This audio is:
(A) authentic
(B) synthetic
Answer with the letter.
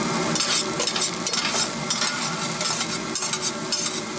A